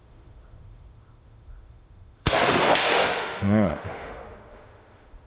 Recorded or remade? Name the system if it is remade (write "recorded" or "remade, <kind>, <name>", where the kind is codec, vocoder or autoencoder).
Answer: remade, autoencoder, DAC-VAE